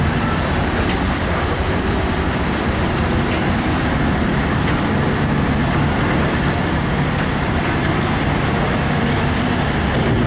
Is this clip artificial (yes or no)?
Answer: yes